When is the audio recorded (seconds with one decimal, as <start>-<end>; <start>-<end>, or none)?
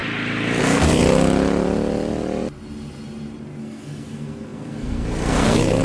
0.0-0.6; 1.0-3.6